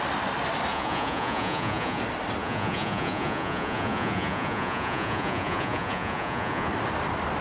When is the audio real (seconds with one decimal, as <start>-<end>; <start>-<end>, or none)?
0.0-0.7; 2.0-2.4; 6.7-7.4